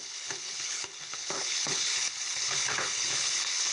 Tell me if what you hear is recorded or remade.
remade